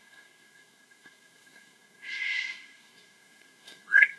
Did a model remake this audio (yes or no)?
yes